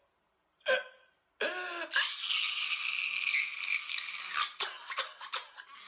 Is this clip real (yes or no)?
yes